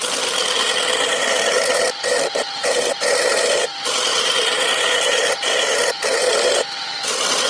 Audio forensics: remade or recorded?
recorded